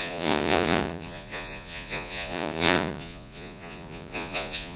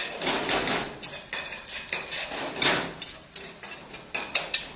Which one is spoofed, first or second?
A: first